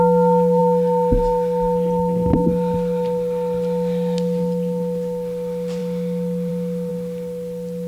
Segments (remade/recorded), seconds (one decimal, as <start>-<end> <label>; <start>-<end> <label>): 0.0-7.9 recorded